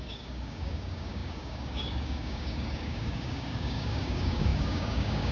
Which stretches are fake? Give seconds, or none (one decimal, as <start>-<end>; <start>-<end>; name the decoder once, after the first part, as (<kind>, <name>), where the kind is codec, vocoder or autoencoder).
0.0-5.3 (codec, DAC)